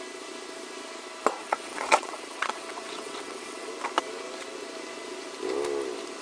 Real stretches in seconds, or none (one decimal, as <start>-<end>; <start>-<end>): 0.0-1.4; 3.7-6.2